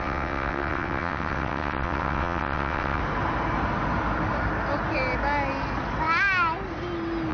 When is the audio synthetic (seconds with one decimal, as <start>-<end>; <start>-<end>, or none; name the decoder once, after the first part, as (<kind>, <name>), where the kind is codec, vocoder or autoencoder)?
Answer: 0.0-3.0 (vocoder, WaveNeXt)